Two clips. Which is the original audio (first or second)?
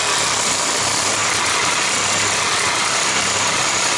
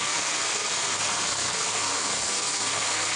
first